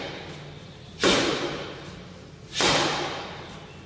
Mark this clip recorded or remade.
recorded